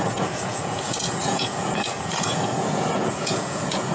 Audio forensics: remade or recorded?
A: remade